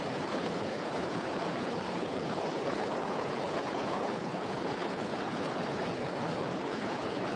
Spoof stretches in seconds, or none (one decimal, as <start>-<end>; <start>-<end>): 0.0-7.4